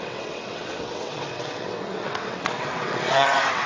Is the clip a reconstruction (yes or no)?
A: yes